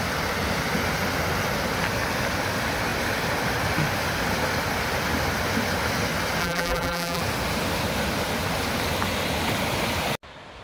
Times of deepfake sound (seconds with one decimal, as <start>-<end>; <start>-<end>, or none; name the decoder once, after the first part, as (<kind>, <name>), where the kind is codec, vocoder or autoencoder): 6.4-7.2 (vocoder, BigVGAN v2)